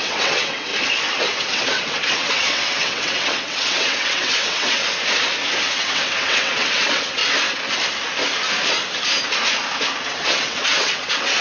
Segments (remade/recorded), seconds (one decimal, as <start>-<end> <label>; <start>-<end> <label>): 0.0-0.7 remade; 0.7-1.2 recorded; 1.2-4.8 remade; 4.8-5.6 recorded; 5.6-7.2 remade; 7.2-10.1 recorded; 10.1-11.4 remade